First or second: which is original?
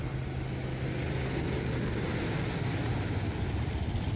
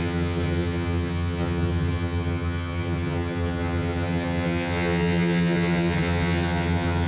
first